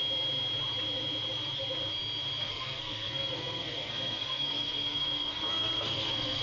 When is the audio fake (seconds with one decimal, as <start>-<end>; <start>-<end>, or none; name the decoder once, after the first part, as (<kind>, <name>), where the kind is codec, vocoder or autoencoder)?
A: 2.4-6.4 (codec, SNAC)